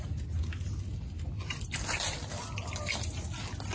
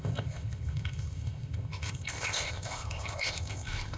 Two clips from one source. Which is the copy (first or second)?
second